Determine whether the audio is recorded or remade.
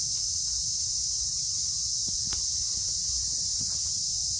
recorded